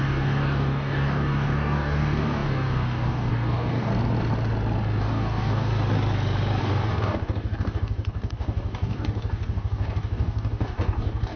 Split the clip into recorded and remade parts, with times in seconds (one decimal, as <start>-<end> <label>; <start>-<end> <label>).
0.0-3.9 remade; 3.9-5.0 recorded; 5.0-5.7 remade; 5.7-6.6 recorded; 6.6-11.4 remade